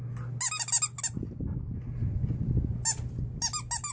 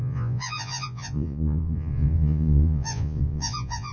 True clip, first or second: first